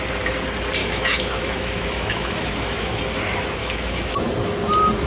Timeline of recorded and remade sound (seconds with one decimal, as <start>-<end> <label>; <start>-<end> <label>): 0.0-0.8 recorded; 0.8-3.0 remade; 3.0-3.6 recorded; 3.6-4.1 remade; 4.1-5.1 recorded